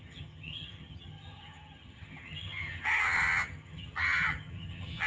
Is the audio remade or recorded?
remade